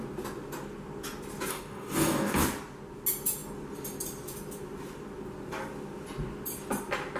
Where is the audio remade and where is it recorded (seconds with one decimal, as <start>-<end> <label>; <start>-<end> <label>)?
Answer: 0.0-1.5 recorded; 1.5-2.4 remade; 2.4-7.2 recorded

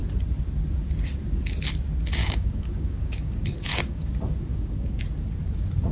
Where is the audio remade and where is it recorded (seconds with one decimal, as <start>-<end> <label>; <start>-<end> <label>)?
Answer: 0.0-2.2 recorded; 2.2-4.1 remade; 4.1-4.5 recorded; 4.5-5.0 remade; 5.0-5.9 recorded

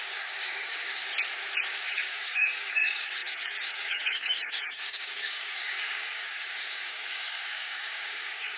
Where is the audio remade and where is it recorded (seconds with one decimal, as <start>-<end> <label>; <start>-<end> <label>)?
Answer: 0.0-1.0 remade; 1.0-1.8 recorded; 1.8-8.6 remade

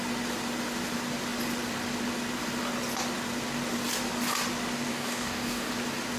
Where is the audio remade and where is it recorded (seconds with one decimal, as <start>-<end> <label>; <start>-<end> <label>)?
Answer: 0.0-4.9 recorded; 4.9-5.7 remade; 5.7-6.2 recorded

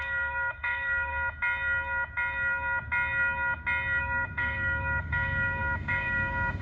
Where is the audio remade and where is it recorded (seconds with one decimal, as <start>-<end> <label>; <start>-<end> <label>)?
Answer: 0.0-1.1 remade; 1.1-4.0 recorded; 4.0-6.6 remade

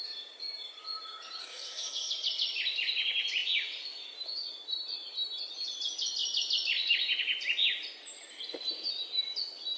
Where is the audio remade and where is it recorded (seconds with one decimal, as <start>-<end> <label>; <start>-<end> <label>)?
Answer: 0.0-1.4 recorded; 1.4-2.1 remade; 2.1-9.8 recorded